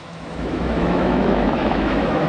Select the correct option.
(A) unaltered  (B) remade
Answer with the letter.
B